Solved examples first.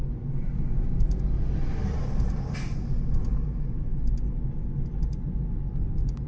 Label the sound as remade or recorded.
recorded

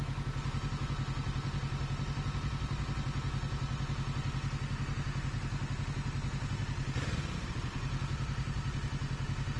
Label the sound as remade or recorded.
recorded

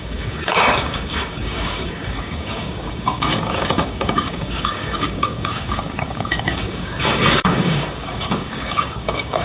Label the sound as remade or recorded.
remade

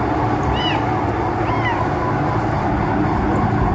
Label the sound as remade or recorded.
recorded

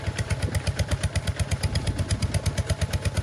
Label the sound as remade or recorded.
remade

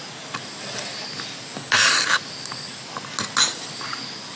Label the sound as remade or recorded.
recorded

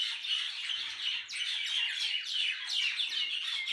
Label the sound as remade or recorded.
recorded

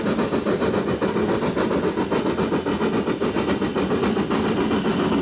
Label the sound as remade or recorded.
recorded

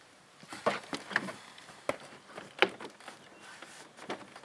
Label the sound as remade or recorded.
recorded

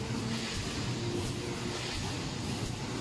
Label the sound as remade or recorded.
recorded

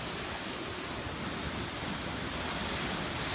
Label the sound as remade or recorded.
recorded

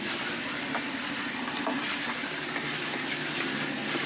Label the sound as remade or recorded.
recorded